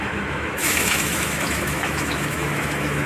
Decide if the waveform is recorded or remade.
remade